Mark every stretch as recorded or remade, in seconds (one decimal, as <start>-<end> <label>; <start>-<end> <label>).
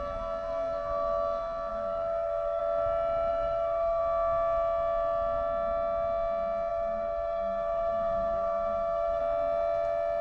0.0-1.7 recorded; 1.7-2.6 remade; 2.6-3.3 recorded; 3.3-4.0 remade; 4.0-6.7 recorded; 6.7-9.2 remade; 9.2-10.2 recorded